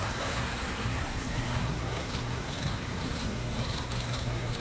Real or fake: fake